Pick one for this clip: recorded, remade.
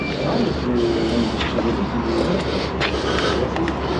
recorded